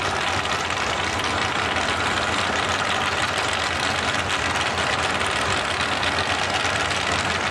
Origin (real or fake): real